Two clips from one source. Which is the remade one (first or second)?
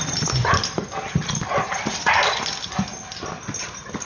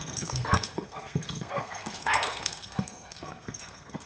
second